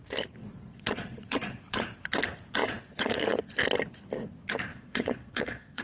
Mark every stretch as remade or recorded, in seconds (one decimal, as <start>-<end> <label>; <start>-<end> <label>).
0.0-0.4 recorded; 0.4-1.8 remade; 1.8-2.6 recorded; 2.6-3.4 remade; 3.4-4.7 recorded; 4.7-5.8 remade